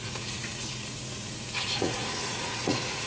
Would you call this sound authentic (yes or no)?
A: no